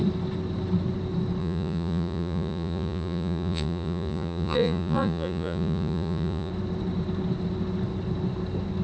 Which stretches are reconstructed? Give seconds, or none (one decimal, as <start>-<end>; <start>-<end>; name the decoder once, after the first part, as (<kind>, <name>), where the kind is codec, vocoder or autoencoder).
1.4-6.5 (vocoder, Vocos)